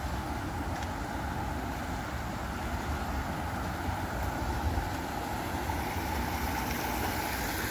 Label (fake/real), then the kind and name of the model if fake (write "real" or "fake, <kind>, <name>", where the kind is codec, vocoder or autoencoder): real